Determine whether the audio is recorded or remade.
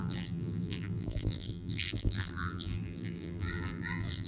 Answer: remade